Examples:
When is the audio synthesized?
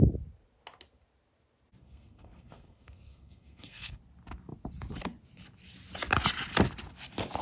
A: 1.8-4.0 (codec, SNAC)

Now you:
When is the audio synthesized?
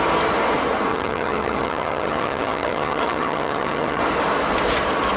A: 0.9-4.0 (vocoder, HiFi-GAN)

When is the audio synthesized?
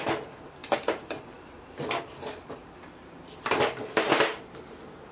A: 0.6-2.0 (vocoder, BigVGAN v2); 2.6-3.2